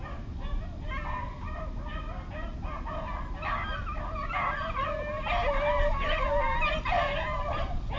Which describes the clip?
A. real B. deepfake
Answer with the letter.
A